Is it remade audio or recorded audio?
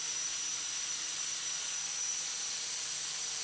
recorded